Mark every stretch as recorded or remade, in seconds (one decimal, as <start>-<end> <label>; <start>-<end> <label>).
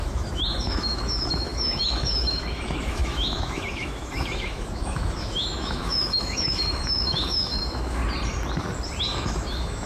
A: 0.0-8.0 remade; 8.0-9.0 recorded; 9.0-9.9 remade